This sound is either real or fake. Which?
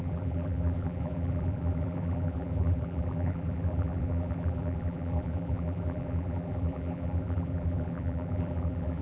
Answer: fake